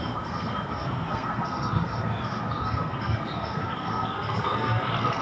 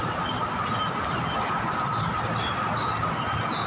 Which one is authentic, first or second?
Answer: second